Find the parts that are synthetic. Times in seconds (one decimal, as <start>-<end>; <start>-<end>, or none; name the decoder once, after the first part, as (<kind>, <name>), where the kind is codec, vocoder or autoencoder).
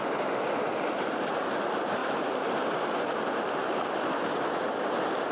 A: 2.0-2.8 (vocoder, BigVGAN v2)